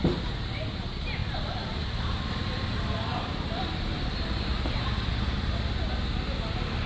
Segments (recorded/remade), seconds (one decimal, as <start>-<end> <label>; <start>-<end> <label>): 0.0-1.2 recorded; 1.2-5.1 remade; 5.1-6.9 recorded